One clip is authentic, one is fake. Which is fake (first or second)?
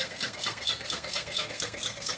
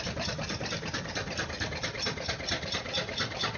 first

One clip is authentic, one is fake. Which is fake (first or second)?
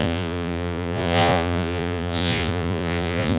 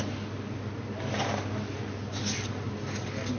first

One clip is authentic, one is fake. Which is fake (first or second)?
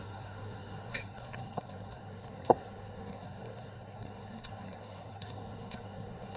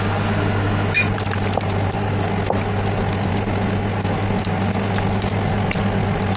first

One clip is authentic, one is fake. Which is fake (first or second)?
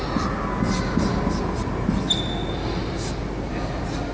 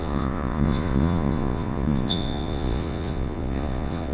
second